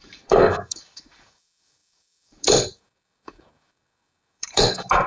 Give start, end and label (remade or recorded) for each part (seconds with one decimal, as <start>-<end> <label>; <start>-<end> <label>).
0.0-5.1 remade